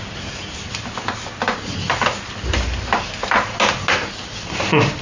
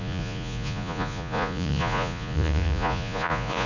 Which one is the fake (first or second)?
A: second